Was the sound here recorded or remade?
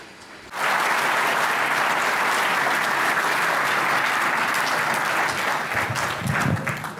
recorded